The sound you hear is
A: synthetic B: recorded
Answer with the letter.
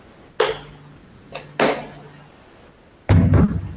B